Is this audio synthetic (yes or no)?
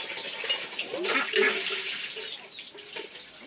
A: no